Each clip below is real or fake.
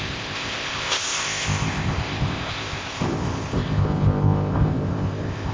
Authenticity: fake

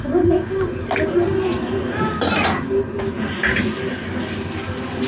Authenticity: real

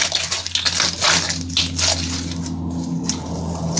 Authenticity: real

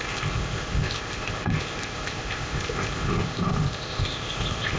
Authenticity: fake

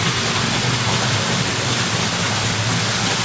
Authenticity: real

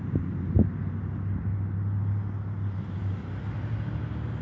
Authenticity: real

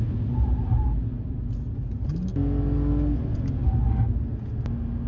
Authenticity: real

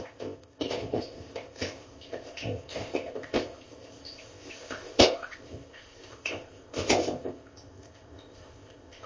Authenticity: fake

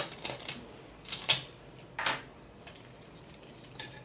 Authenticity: real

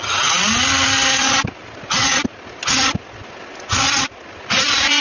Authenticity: real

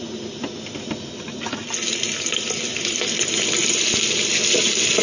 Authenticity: real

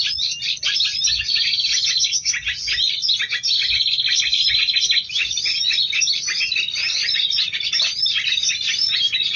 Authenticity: real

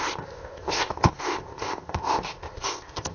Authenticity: fake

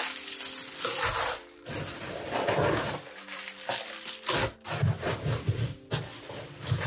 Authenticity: real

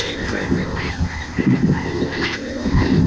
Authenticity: fake